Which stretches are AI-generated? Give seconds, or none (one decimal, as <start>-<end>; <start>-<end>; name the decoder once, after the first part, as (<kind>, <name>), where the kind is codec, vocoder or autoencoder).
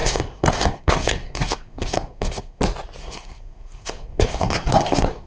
0.0-2.6 (codec, SNAC); 3.0-5.3